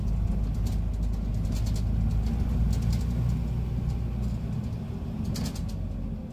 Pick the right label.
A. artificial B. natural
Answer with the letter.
B